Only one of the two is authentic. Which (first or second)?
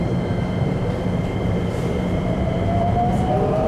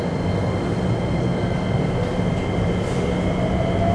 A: second